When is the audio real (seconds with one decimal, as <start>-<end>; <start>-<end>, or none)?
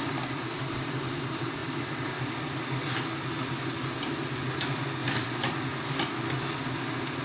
0.0-7.2